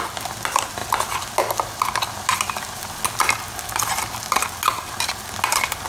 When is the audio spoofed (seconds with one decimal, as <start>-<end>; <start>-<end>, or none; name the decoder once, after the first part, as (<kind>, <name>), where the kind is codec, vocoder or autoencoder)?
none